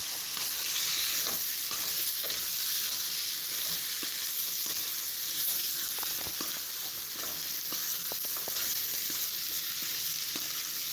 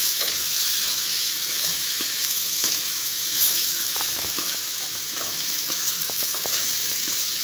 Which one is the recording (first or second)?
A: first